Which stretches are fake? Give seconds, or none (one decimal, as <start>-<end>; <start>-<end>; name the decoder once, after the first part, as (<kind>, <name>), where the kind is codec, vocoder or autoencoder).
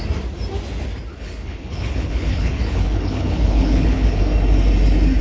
1.1-4.2 (codec, HILCodec)